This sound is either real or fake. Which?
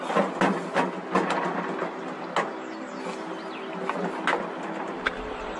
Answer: real